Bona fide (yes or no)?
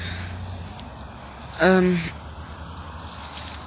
yes